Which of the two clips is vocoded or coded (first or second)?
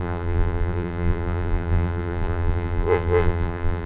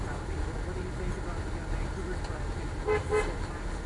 first